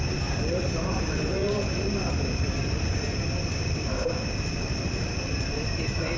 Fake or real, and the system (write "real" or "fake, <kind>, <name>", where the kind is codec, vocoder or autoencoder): fake, vocoder, BigVGAN v2